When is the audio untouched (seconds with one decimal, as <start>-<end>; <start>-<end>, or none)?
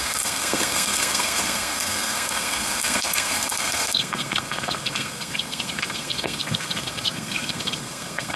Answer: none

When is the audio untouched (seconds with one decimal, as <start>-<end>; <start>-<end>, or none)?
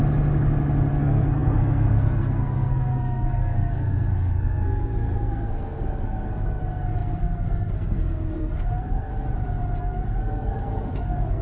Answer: 0.0-0.9; 9.1-9.8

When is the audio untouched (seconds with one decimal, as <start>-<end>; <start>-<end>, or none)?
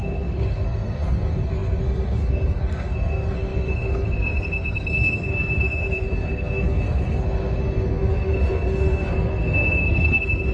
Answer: none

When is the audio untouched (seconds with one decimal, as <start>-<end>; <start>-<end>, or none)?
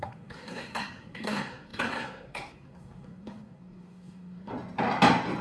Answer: 4.5-5.4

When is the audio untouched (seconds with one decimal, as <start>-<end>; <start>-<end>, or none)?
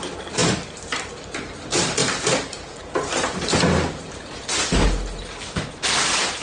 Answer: 0.0-6.4